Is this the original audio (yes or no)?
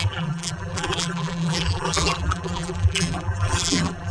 no